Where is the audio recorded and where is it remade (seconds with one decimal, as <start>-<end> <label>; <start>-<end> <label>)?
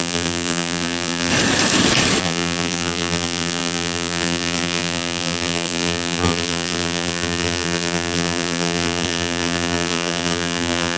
0.0-1.3 remade; 1.3-2.2 recorded; 2.2-11.0 remade